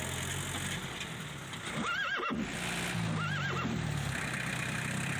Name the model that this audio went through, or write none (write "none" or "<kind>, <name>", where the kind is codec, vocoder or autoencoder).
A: none